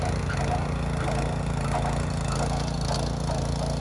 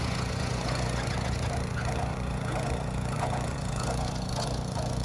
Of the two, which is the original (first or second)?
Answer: first